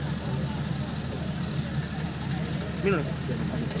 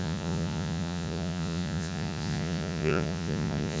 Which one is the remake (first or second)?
second